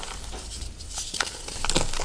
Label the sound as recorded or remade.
recorded